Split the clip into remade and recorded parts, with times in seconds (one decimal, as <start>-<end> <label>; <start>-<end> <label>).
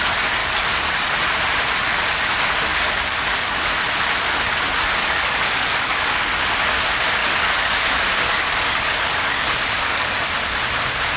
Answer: 0.0-0.4 recorded; 0.4-0.9 remade; 0.9-2.7 recorded; 2.7-3.7 remade; 3.7-5.0 recorded; 5.0-6.4 remade; 6.4-7.2 recorded; 7.2-10.1 remade; 10.1-11.2 recorded